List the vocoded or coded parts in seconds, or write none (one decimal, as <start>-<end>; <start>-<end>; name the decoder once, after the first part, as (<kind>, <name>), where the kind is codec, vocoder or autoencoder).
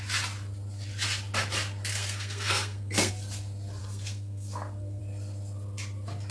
1.9-3.1 (codec, SNAC); 3.8-5.0